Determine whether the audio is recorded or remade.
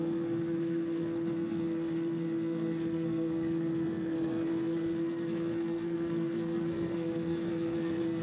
remade